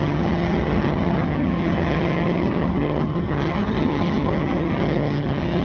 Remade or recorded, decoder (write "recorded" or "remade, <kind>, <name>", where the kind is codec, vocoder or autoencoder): remade, vocoder, HiFi-GAN